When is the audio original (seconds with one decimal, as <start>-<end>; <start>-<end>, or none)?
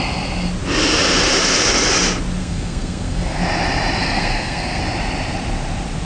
0.0-2.4; 3.4-4.0; 4.8-6.0